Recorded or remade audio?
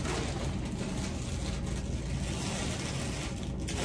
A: recorded